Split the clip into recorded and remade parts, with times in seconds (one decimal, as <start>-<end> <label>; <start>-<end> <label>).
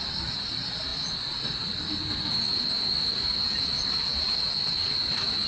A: 0.0-5.5 recorded